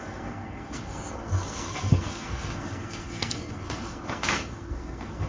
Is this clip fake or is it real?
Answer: fake